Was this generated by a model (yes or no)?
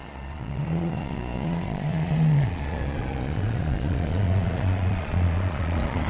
yes